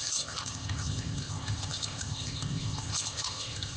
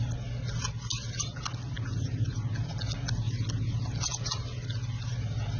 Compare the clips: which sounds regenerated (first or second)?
first